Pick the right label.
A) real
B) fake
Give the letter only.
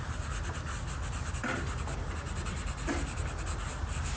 A